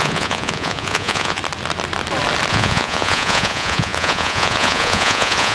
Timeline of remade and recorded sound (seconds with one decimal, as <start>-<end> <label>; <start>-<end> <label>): 0.0-1.4 remade; 1.4-2.5 recorded; 2.5-5.5 remade